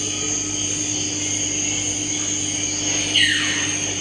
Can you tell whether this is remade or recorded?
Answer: recorded